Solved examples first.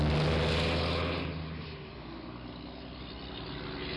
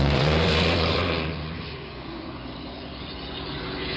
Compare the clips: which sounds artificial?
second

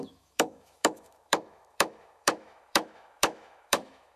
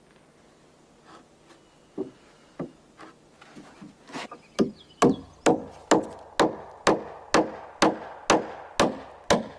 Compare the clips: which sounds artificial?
first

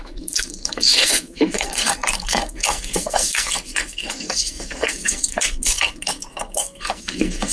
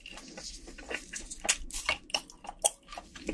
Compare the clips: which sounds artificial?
first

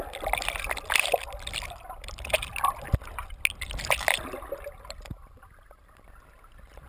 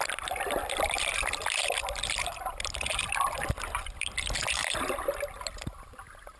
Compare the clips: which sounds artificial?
second